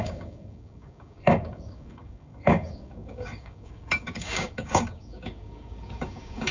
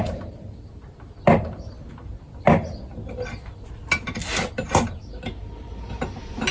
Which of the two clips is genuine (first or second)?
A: second